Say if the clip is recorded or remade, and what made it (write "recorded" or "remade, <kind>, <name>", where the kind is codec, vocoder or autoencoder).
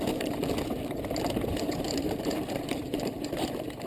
remade, vocoder, BigVGAN v2